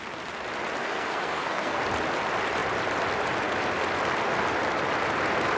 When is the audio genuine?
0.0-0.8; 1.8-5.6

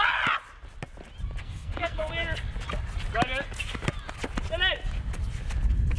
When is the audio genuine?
0.0-1.4; 2.1-6.0

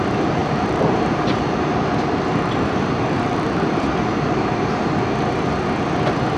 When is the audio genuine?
0.0-0.4; 1.1-2.3; 4.6-6.4